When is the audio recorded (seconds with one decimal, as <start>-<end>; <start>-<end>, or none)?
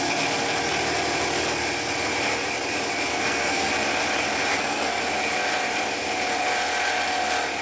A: 0.0-3.1; 3.7-4.5; 5.0-7.6